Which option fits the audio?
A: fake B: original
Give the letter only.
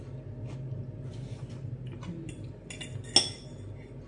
B